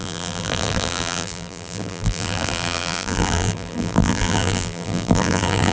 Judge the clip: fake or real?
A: fake